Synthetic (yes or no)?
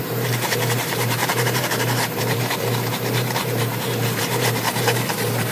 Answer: yes